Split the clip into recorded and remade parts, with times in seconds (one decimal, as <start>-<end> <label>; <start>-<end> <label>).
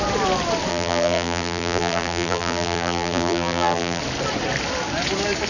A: 0.0-0.7 recorded; 0.7-4.0 remade; 4.0-5.5 recorded